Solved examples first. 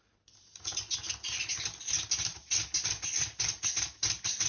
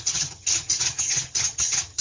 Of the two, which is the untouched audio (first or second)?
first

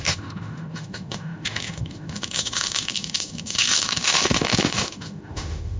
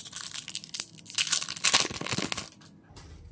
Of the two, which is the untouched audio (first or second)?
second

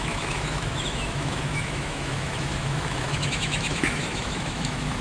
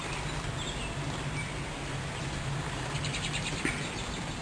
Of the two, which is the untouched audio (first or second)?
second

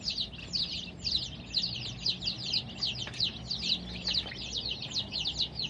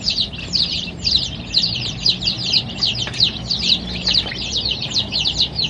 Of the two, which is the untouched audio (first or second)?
first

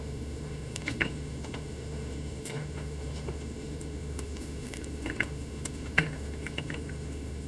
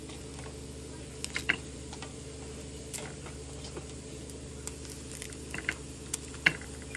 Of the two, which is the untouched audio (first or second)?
second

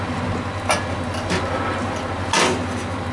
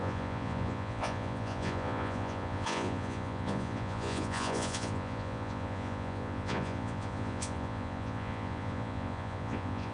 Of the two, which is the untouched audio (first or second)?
first